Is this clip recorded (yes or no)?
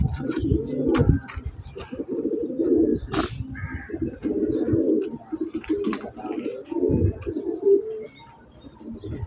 yes